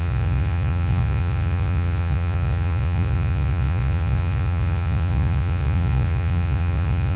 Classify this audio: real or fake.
fake